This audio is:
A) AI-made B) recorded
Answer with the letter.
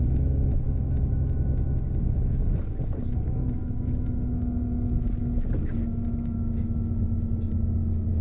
B